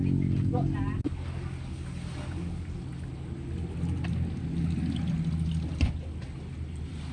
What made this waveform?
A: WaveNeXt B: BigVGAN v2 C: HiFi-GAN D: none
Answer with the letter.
D